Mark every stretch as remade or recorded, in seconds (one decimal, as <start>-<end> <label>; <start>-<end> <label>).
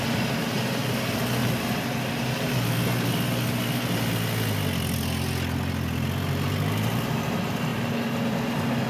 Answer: 0.0-8.9 recorded